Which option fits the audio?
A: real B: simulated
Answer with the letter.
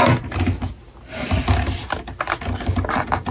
A